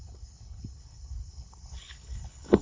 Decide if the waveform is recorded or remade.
remade